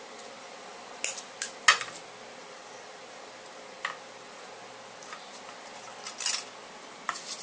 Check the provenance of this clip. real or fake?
real